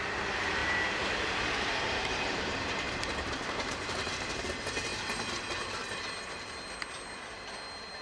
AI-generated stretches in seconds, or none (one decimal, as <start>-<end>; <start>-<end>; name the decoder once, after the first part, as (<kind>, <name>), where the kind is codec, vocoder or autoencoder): 0.6-4.4 (vocoder, BigVGAN v2)